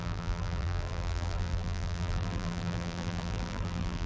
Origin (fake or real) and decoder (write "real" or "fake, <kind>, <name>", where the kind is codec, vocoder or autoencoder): fake, vocoder, BigVGAN v2